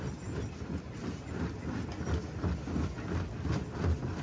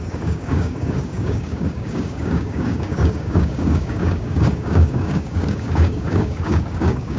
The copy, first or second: second